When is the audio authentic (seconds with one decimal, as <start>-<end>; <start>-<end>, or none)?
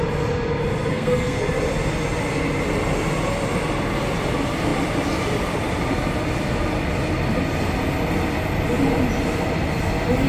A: 0.0-0.9; 1.4-10.3